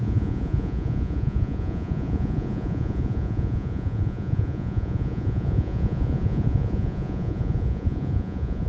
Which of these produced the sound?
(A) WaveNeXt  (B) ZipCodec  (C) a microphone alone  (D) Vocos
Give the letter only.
D